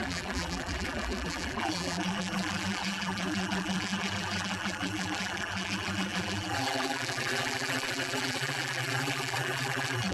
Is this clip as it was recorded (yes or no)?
no